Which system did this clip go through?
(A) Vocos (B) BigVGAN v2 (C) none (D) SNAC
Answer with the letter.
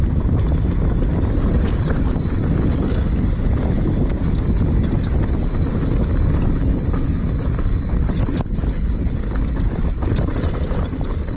C